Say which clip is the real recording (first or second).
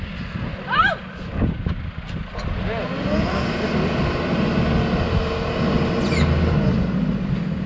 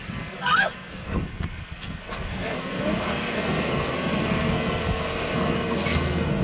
first